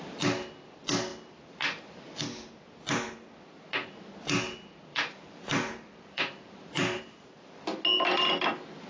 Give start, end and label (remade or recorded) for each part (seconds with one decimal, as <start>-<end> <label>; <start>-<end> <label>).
0.0-4.9 recorded; 4.9-7.0 remade; 7.0-8.9 recorded